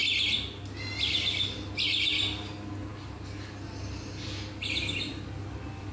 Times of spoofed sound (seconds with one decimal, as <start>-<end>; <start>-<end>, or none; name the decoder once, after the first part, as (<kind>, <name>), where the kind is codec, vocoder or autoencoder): none